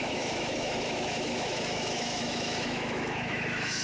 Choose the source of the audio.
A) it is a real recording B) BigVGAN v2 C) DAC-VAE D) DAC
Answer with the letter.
C